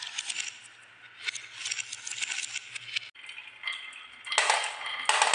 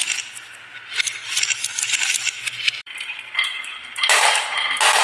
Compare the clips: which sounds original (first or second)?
first